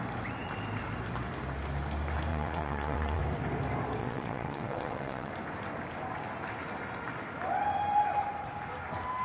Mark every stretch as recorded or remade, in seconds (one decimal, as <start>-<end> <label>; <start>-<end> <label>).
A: 0.0-2.3 recorded; 2.3-3.2 remade; 3.2-4.0 recorded; 4.0-5.3 remade; 5.3-9.2 recorded

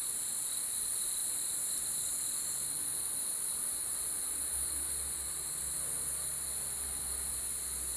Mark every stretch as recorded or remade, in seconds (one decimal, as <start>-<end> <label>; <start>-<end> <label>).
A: 0.0-8.0 recorded